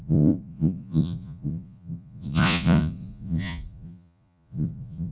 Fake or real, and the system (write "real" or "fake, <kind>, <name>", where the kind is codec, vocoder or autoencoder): fake, vocoder, Vocos